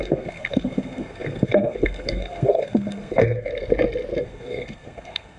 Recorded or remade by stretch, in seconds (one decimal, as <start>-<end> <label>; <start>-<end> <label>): 0.0-3.5 remade; 3.5-4.2 recorded; 4.2-5.4 remade